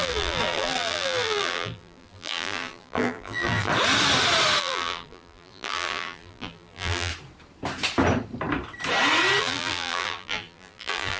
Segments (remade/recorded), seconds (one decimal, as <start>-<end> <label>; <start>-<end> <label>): 0.0-3.7 remade; 3.7-4.6 recorded; 4.6-7.1 remade; 7.1-9.4 recorded; 9.4-11.2 remade